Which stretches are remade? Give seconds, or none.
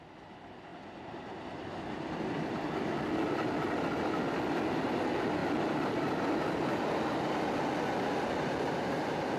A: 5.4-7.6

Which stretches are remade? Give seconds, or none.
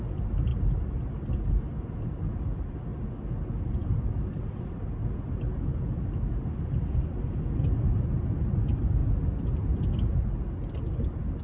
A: 0.0-0.5; 1.6-2.9; 3.7-9.0; 9.7-11.4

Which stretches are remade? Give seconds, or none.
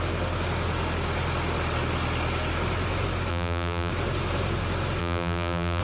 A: 3.3-3.9; 5.0-5.8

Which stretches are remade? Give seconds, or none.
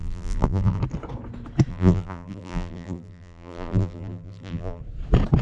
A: 0.0-0.8; 1.7-4.8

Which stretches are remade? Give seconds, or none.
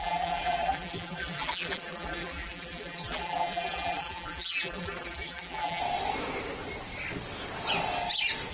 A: 0.0-5.8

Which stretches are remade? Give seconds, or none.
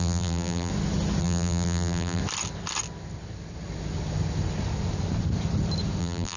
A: 0.0-0.7; 1.2-2.2; 6.0-6.4